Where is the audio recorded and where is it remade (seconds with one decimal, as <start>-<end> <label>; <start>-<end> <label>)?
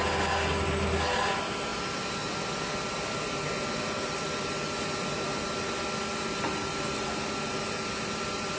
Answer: 0.0-8.6 recorded